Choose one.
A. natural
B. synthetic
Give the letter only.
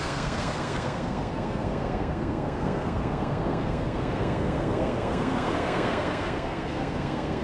B